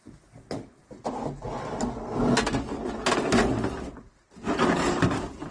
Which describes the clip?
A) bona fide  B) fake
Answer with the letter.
A